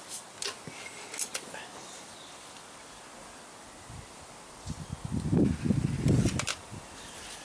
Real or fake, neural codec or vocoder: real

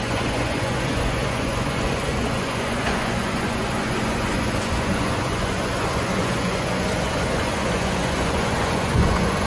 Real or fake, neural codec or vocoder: fake, vocoder, Vocos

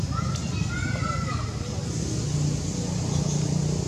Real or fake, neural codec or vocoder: real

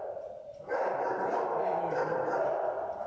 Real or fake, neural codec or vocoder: real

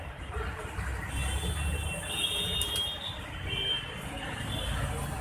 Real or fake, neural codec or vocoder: real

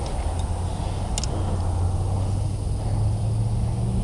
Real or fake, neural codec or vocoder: real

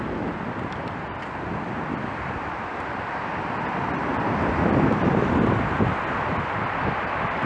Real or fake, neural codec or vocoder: real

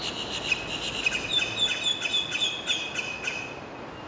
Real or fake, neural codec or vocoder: real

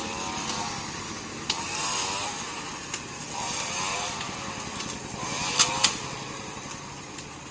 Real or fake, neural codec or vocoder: real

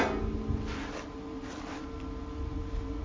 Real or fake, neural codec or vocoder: real